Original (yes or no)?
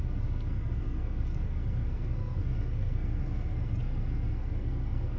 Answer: no